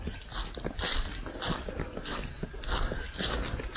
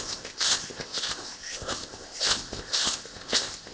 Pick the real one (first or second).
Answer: first